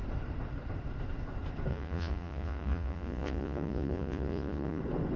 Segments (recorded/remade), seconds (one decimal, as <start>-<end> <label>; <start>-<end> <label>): 0.0-1.7 recorded; 1.7-4.8 remade; 4.8-5.2 recorded